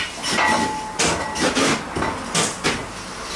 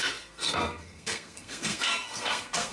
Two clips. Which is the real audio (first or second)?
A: first